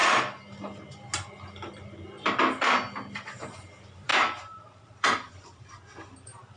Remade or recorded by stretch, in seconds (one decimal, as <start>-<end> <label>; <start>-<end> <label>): 0.0-3.1 recorded; 3.1-6.6 remade